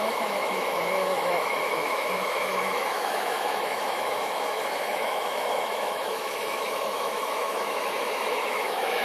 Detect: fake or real fake